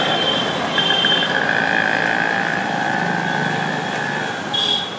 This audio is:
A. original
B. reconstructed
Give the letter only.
B